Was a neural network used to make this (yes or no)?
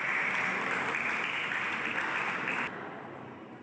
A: no